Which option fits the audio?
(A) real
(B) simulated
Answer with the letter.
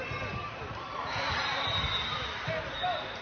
A